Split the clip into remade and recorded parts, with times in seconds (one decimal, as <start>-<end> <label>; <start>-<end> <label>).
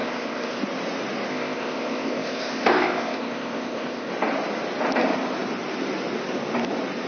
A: 0.0-0.6 remade; 0.6-1.3 recorded; 1.3-4.1 remade; 4.1-7.1 recorded